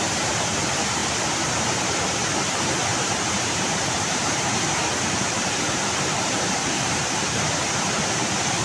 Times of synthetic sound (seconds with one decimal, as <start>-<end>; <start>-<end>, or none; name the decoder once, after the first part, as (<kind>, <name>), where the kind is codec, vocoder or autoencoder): 0.0-8.6 (vocoder, BigVGAN v2)

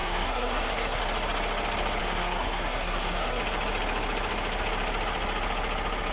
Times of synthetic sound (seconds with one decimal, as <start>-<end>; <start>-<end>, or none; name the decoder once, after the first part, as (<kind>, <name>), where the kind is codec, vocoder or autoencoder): 0.0-1.0 (codec, SNAC); 2.0-3.4